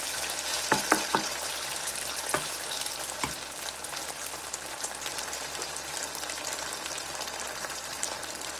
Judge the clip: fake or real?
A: fake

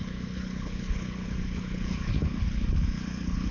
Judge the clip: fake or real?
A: fake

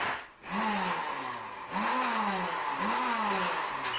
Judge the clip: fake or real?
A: real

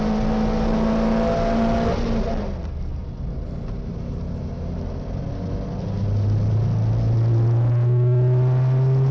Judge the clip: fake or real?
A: real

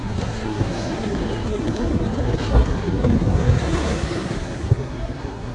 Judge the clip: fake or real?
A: fake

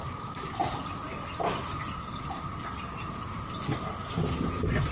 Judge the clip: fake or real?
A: real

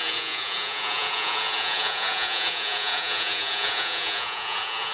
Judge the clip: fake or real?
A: fake